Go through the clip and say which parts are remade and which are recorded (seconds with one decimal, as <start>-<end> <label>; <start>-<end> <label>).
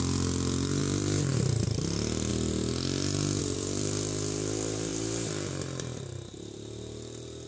0.0-2.3 remade; 2.3-3.4 recorded; 3.4-7.5 remade